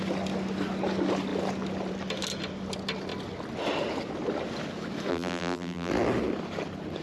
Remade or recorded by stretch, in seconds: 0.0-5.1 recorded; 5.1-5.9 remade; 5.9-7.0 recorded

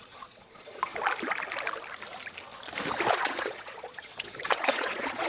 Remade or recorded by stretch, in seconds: 0.0-0.9 remade; 0.9-3.1 recorded; 3.1-5.3 remade

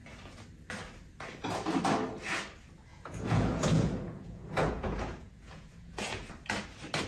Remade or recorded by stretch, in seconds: 0.0-2.9 recorded; 2.9-6.3 remade; 6.3-7.1 recorded

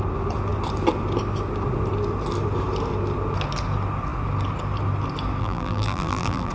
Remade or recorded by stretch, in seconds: 0.0-5.4 recorded; 5.4-6.5 remade

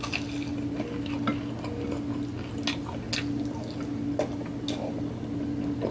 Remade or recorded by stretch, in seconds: 0.0-5.9 recorded

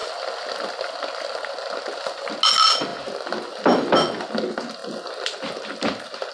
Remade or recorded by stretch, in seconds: 0.0-6.3 recorded

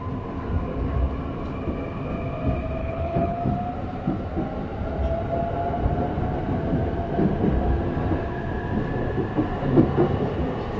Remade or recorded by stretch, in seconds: 0.0-2.8 recorded; 2.8-3.4 remade; 3.4-10.8 recorded